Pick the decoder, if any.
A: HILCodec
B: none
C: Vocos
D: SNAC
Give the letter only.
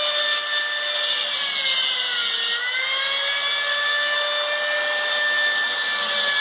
B